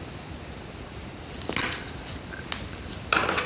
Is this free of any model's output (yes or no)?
yes